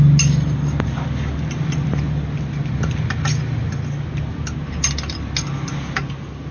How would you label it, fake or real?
real